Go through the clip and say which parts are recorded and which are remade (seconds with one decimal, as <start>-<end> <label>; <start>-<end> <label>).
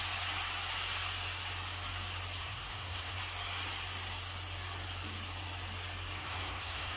0.0-2.4 recorded; 2.4-3.2 remade; 3.2-6.2 recorded; 6.2-7.0 remade